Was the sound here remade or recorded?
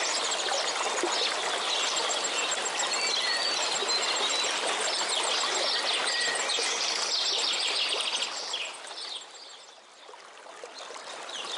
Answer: recorded